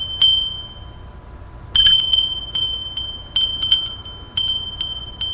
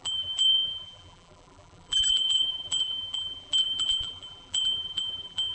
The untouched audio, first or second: first